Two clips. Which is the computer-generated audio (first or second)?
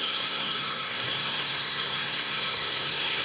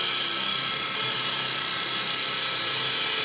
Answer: first